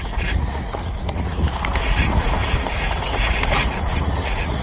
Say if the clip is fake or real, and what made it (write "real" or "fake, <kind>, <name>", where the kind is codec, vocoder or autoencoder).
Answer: fake, vocoder, Vocos